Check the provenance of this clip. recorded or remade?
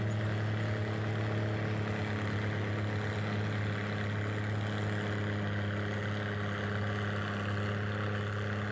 recorded